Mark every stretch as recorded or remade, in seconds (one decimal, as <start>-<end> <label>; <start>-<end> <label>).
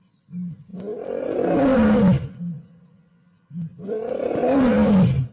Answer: 0.0-5.3 recorded